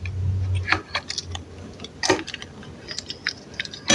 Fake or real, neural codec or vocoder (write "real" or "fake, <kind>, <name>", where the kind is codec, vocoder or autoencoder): real